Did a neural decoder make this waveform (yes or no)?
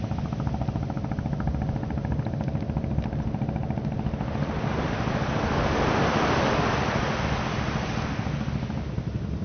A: no